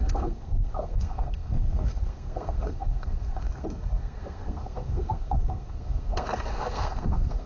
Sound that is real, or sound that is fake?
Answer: fake